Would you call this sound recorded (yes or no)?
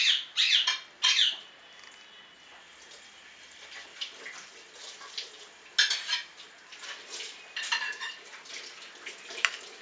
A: yes